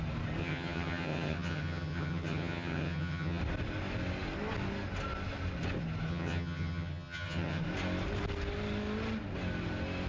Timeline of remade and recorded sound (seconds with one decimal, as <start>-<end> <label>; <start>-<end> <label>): 0.0-0.4 recorded; 0.4-3.4 remade; 3.4-6.1 recorded; 6.1-7.6 remade; 7.6-10.1 recorded